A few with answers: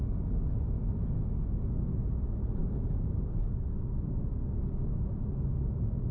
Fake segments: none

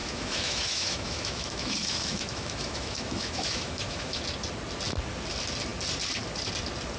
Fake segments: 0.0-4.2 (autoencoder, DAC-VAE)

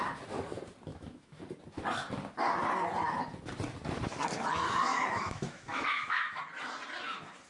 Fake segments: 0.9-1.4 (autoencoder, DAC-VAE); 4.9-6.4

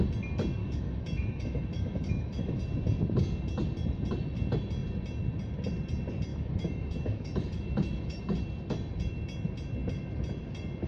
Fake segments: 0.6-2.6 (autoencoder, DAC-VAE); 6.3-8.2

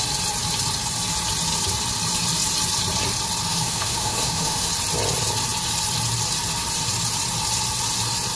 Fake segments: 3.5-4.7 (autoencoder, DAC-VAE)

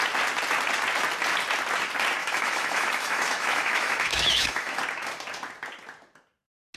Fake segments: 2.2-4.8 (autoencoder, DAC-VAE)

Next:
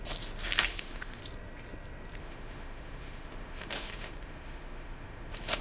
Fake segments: 0.7-1.2 (autoencoder, DAC-VAE); 2.2-5.6